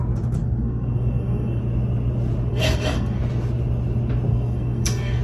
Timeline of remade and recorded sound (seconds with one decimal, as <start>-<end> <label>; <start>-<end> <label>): 0.0-0.4 recorded; 0.4-1.6 remade; 1.6-2.5 recorded; 2.5-3.2 remade; 3.2-4.3 recorded; 4.3-5.2 remade